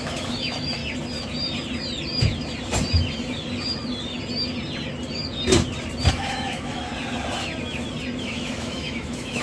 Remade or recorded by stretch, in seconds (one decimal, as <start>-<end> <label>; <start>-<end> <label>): 0.0-0.8 remade; 0.8-6.1 recorded; 6.1-6.9 remade; 6.9-8.2 recorded; 8.2-9.4 remade